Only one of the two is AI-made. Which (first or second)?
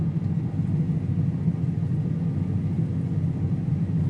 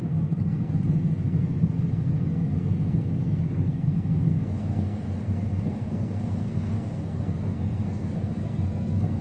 second